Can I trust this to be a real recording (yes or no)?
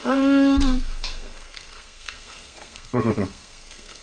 no